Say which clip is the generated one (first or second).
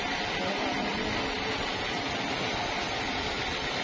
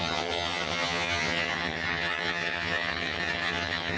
second